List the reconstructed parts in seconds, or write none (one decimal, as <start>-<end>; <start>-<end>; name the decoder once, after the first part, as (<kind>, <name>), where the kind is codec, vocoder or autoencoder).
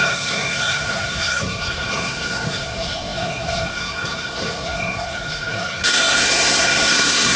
0.0-7.4 (codec, SNAC)